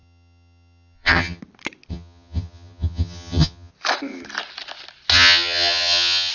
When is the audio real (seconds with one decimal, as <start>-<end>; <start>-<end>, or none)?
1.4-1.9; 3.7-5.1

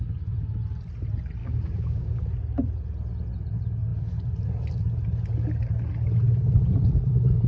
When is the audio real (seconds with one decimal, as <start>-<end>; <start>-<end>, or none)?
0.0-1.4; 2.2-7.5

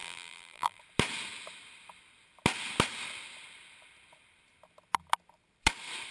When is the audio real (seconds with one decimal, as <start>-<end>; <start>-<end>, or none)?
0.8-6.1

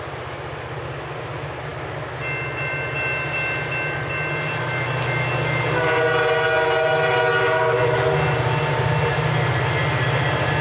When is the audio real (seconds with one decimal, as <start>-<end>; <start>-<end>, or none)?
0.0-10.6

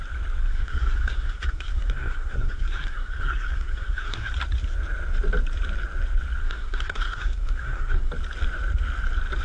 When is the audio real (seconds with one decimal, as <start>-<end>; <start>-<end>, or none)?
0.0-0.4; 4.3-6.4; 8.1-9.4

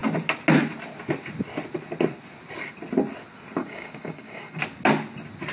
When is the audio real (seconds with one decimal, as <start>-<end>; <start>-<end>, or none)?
0.0-3.6; 4.6-5.5

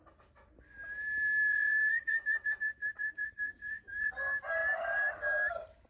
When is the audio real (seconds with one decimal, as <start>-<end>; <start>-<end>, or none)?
0.0-1.5; 4.1-5.9

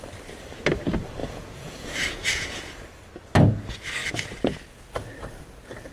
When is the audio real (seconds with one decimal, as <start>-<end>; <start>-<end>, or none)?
0.0-1.2; 2.9-5.9